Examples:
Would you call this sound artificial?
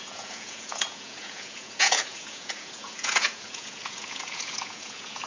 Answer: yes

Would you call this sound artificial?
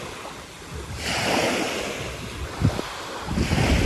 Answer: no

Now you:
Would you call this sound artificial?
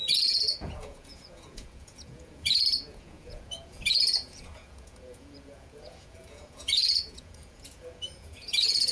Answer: yes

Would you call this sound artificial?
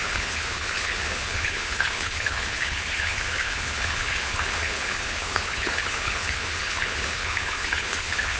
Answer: yes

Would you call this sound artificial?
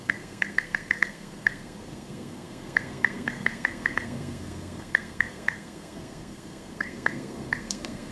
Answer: yes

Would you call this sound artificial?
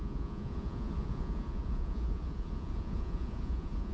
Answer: yes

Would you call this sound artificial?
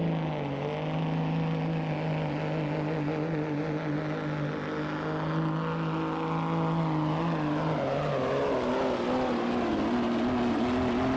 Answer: no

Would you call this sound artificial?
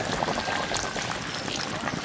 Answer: no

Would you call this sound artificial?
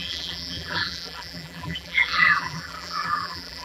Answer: yes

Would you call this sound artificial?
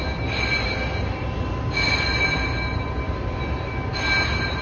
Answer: no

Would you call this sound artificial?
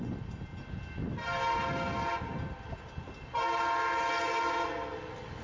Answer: no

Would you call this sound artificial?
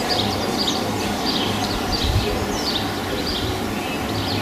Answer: no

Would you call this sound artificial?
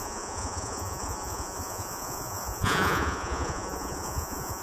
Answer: yes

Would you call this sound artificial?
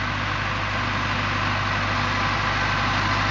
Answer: no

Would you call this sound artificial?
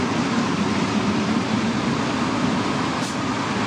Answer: yes